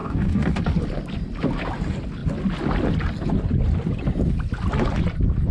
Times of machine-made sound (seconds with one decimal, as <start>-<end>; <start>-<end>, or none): 0.0-0.6